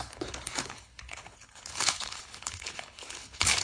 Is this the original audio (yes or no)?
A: no